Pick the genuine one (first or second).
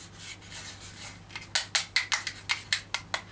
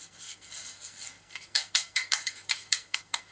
first